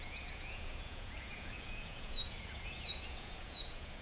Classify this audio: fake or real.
fake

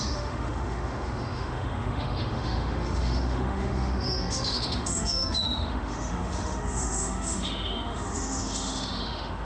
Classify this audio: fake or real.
fake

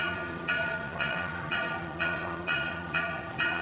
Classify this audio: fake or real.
fake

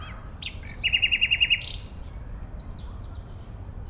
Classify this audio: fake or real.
fake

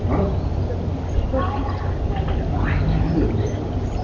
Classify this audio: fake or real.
real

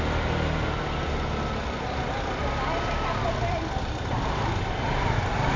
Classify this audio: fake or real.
real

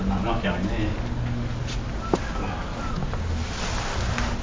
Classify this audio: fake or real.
real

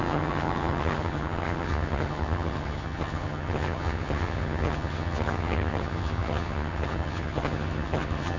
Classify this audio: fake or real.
fake